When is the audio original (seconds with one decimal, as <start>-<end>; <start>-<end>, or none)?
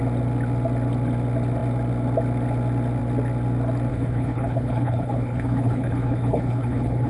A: 0.0-3.9